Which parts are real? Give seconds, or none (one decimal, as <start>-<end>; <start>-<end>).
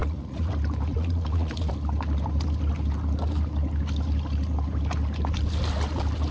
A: 0.5-0.9; 1.7-6.3